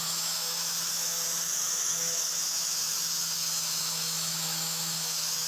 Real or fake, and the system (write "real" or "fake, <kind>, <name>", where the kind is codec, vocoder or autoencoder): fake, autoencoder, DAC-VAE